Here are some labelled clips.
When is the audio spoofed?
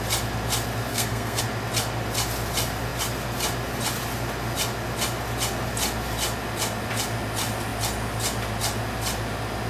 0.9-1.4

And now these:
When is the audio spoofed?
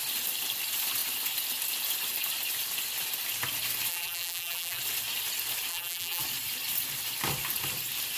3.9-4.8; 5.7-6.2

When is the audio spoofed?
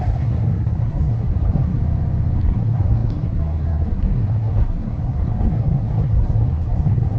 0.0-1.8; 2.4-7.2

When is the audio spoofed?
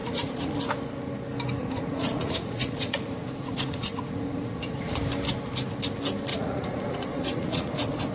0.0-0.7; 1.6-5.0; 6.3-8.1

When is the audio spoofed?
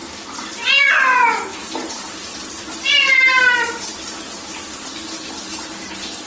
0.0-0.9; 1.5-5.3